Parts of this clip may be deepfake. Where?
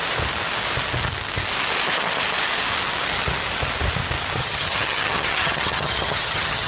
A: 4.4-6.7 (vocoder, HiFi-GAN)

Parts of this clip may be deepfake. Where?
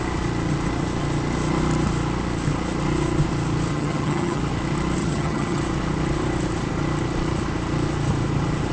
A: 3.7-4.4 (vocoder, HiFi-GAN); 5.0-5.6